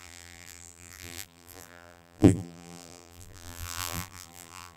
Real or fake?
fake